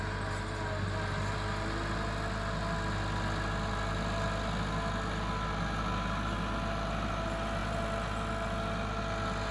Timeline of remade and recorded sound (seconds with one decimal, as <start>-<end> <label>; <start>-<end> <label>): 0.0-9.5 recorded